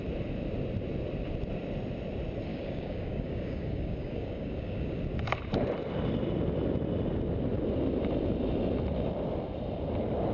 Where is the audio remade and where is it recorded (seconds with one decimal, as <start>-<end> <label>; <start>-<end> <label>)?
0.0-2.5 recorded; 2.5-5.0 remade; 5.0-10.3 recorded